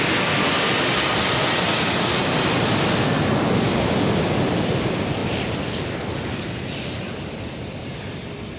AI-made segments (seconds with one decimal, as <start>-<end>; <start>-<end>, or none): none